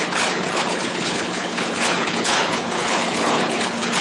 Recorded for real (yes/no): no